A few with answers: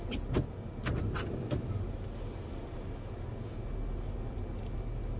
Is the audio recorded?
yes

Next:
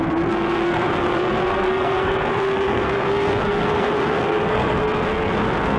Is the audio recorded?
no